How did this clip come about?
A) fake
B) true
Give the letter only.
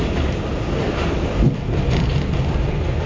B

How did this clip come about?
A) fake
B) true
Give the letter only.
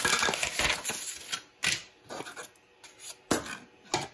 B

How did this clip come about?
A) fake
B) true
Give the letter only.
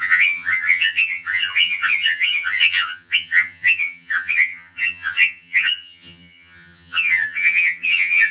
A